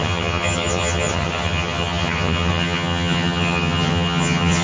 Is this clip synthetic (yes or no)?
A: yes